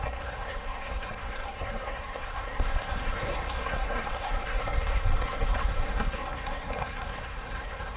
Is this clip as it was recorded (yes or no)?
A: no